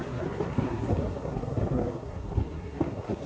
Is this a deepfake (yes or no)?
yes